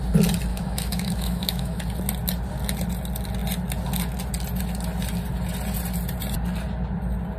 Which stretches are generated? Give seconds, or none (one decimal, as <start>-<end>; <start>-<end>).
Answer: 0.5-1.8

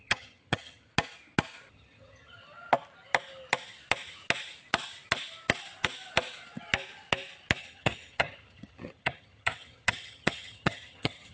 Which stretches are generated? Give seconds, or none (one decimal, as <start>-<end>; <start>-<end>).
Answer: 0.0-0.9; 1.7-2.4; 7.6-11.3